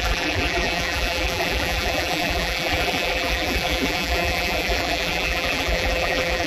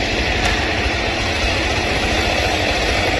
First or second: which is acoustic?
second